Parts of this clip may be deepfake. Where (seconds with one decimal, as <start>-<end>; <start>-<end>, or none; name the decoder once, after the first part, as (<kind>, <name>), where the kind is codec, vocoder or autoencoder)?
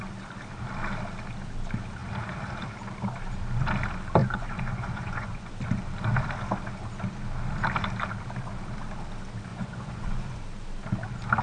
4.2-5.5 (vocoder, Vocos); 9.5-10.4